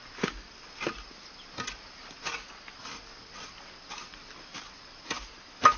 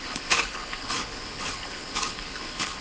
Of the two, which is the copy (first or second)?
second